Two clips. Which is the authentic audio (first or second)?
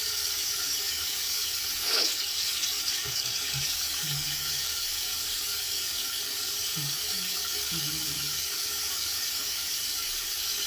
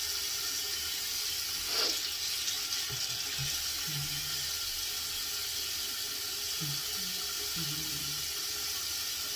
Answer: second